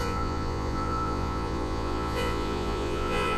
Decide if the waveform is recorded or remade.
remade